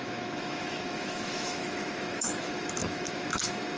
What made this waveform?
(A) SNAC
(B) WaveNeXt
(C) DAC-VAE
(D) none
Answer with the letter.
C